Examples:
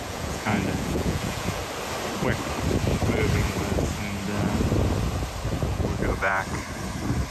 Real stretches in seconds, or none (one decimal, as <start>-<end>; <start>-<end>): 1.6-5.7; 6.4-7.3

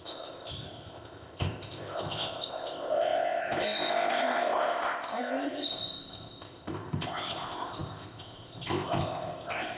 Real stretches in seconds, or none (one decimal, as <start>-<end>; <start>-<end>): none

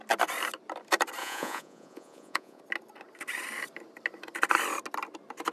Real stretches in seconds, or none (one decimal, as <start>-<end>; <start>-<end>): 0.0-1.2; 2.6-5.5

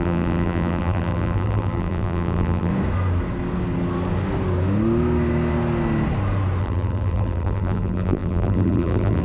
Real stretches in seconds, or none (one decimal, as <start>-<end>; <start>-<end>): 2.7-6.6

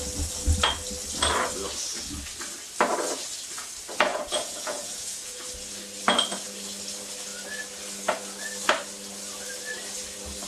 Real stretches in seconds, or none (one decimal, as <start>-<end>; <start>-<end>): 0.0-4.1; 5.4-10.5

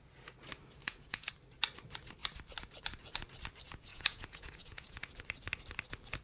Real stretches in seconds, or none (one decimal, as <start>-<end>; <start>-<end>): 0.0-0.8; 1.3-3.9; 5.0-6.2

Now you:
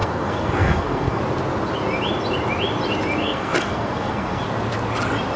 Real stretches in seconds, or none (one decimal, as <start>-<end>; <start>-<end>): 1.2-3.2; 4.4-5.4

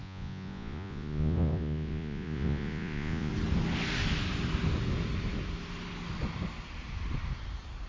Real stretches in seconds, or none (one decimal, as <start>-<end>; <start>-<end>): 3.3-7.9